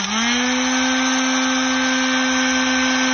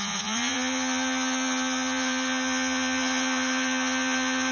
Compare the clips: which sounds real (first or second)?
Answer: first